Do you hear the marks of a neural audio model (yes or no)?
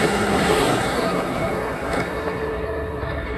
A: yes